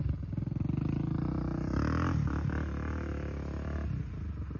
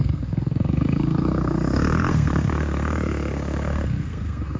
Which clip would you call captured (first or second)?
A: first